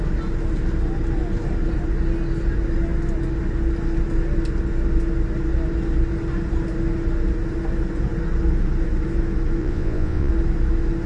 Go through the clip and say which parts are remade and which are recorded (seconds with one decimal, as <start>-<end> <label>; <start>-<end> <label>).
0.0-9.6 recorded; 9.6-10.3 remade; 10.3-11.1 recorded